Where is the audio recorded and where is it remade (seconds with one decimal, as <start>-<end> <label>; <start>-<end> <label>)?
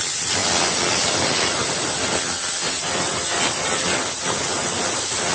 0.0-5.3 recorded